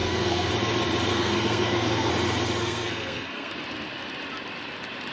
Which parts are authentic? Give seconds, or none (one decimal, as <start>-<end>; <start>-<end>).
0.5-1.1; 2.1-2.6; 3.5-5.1